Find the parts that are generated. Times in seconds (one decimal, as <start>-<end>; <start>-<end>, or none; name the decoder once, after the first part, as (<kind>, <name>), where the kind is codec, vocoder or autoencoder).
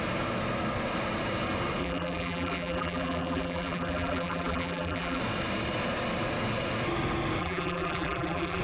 1.8-5.2 (vocoder, BigVGAN v2); 7.4-8.6